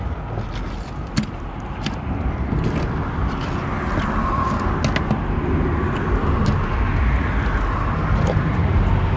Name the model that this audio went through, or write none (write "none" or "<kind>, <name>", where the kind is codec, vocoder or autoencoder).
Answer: none